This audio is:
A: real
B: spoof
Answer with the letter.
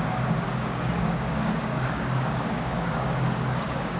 B